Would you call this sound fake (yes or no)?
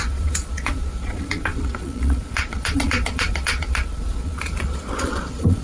yes